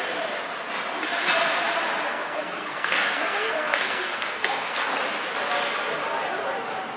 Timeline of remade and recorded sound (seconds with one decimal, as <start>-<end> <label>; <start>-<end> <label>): 0.0-2.1 recorded; 2.1-4.9 remade; 4.9-7.0 recorded